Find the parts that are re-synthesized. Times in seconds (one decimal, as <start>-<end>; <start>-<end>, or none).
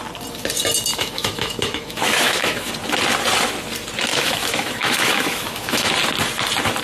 0.9-2.7; 4.1-5.9